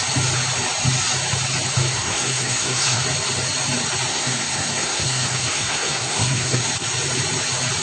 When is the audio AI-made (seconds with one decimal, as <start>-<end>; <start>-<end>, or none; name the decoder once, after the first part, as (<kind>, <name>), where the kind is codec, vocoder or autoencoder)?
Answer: 1.9-3.0 (codec, SNAC); 4.1-6.7